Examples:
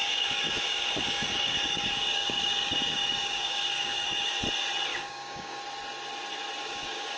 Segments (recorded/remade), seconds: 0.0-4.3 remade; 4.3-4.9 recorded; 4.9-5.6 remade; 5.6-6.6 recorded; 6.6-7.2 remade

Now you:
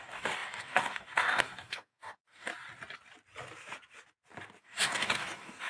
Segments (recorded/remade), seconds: 0.0-2.5 remade; 2.5-4.6 recorded; 4.6-5.7 remade

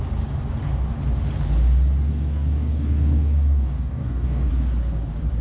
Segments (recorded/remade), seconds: 0.0-2.1 recorded; 2.1-4.5 remade; 4.5-5.4 recorded

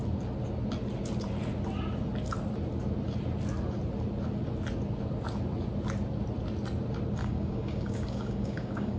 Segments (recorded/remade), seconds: 0.0-7.2 recorded; 7.2-9.0 remade

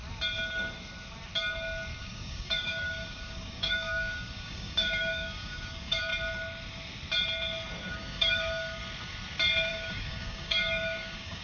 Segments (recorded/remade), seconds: 0.0-2.0 recorded; 2.0-6.1 remade; 6.1-7.9 recorded; 7.9-8.8 remade; 8.8-9.7 recorded; 9.7-11.4 remade

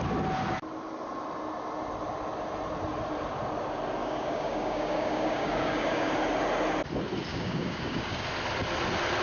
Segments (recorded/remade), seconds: 0.0-4.0 recorded; 4.0-6.1 remade; 6.1-7.3 recorded; 7.3-8.2 remade; 8.2-9.2 recorded

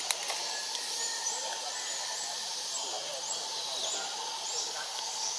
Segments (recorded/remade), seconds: 0.0-4.6 recorded; 4.6-5.4 remade